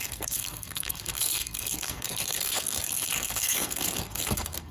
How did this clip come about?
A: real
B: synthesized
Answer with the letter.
B